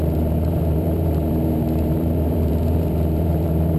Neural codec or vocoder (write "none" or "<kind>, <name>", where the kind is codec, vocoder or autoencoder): vocoder, BigVGAN v2